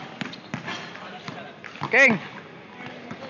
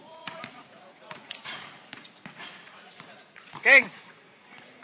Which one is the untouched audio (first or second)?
first